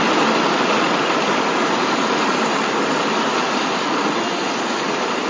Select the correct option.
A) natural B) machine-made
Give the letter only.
A